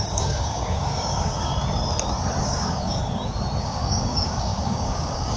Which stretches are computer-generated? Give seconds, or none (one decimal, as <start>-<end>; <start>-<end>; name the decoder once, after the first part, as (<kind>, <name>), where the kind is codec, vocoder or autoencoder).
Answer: 0.0-1.5 (codec, DAC); 2.4-3.0; 3.6-5.4